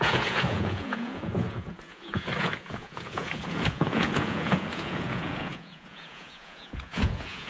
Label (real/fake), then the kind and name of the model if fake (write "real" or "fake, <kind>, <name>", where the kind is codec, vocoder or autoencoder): fake, vocoder, Vocos